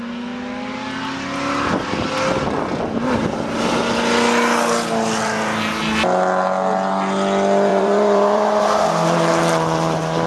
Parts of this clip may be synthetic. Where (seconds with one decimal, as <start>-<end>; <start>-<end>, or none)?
7.7-8.6